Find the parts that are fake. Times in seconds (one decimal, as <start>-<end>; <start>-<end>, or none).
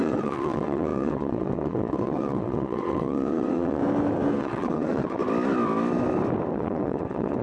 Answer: 0.0-3.8; 4.4-5.2; 6.5-7.4